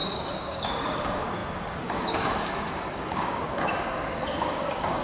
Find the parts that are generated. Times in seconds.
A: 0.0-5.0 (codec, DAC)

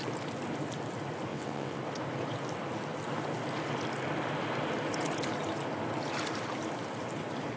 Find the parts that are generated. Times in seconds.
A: 1.3-1.8 (vocoder, WaveNeXt)

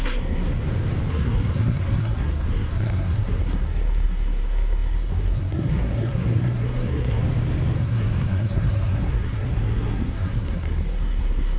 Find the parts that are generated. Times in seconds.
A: 0.0-0.5 (codec, SNAC); 1.1-7.2; 7.8-11.6

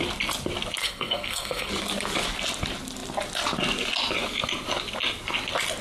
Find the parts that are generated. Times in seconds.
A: 0.8-1.7 (codec, SNAC)

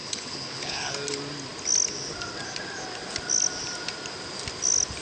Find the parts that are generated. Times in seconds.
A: 0.0-0.9 (codec, HILCodec)